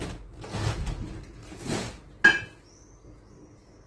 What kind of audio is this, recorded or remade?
recorded